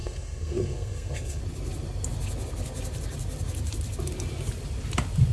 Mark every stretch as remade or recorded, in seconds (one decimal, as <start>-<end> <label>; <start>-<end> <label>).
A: 0.0-1.4 remade; 1.4-5.3 recorded